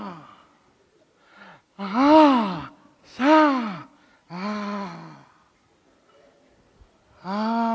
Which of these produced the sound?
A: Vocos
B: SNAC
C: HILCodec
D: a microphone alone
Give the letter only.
D